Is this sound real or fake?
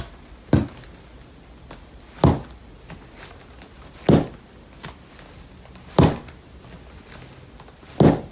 real